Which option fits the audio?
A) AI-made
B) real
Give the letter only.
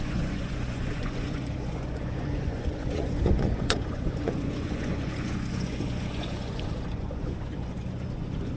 A